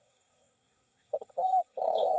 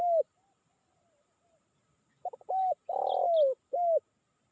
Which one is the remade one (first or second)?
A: first